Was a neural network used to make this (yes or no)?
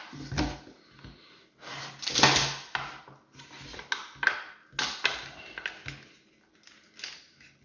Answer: no